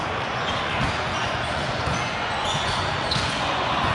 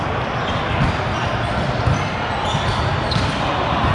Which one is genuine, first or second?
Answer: second